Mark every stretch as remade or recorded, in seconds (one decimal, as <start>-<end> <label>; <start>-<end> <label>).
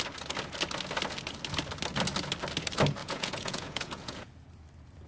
0.0-3.0 recorded; 3.0-4.3 remade; 4.3-5.1 recorded